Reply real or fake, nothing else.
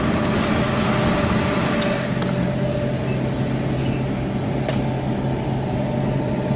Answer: real